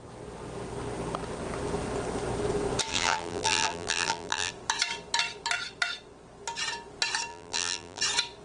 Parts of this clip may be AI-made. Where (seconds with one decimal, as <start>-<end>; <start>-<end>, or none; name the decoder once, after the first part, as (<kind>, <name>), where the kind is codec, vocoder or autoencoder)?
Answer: 2.9-4.5 (vocoder, BigVGAN v2); 7.3-8.0